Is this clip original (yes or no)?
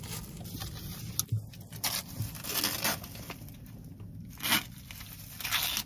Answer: yes